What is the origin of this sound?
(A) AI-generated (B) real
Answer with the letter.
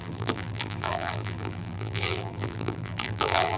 A